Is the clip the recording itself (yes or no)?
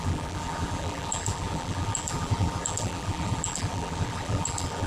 no